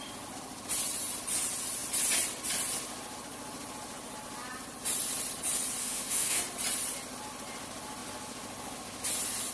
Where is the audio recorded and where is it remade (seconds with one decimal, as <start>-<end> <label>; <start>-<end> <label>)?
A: 0.0-5.8 recorded; 5.8-6.4 remade; 6.4-9.5 recorded